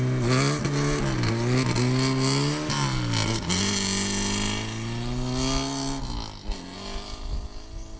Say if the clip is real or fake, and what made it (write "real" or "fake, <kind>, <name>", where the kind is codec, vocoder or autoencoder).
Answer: real